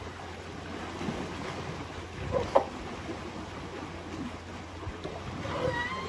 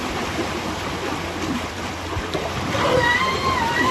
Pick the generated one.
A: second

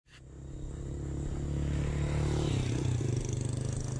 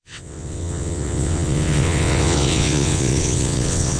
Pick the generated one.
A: second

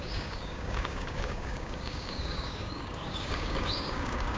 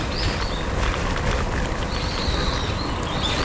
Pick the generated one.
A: first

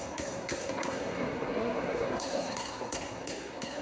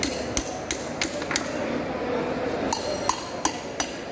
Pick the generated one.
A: first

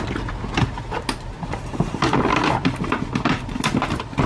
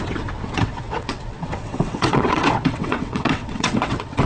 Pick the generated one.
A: second